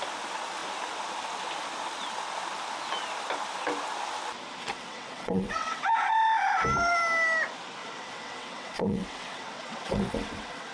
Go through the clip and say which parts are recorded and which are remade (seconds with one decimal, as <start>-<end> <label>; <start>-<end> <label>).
0.0-4.7 recorded; 4.7-5.9 remade; 5.9-7.8 recorded; 7.8-10.7 remade